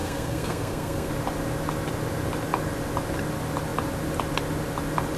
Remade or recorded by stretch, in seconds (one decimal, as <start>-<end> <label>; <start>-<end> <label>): 0.0-1.1 remade; 1.1-5.2 recorded